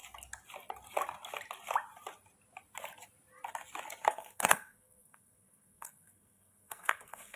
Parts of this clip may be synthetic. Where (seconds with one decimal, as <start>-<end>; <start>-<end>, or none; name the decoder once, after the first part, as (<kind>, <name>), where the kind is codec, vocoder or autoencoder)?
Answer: 4.1-7.4 (codec, SNAC)